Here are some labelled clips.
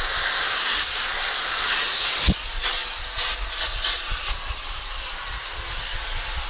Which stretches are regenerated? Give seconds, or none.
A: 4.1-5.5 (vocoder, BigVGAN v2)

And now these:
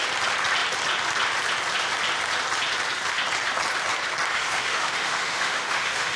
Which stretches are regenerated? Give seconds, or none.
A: 4.3-6.2 (autoencoder, DAC-VAE)

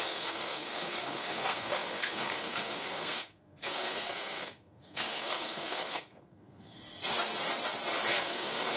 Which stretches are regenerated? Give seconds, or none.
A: 0.0-6.8 (codec, SNAC); 8.2-8.8

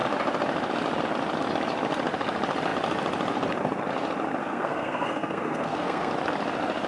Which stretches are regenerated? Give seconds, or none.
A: 4.4-6.1 (codec, SNAC)